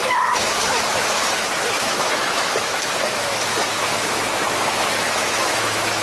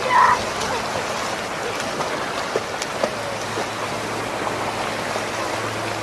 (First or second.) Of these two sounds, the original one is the second